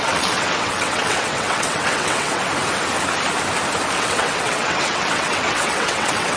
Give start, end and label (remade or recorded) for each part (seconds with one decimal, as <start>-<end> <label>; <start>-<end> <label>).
0.0-2.4 remade; 2.4-4.0 recorded; 4.0-6.4 remade